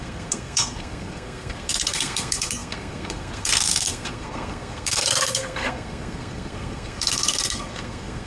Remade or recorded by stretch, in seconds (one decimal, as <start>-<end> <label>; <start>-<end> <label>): 0.0-8.3 remade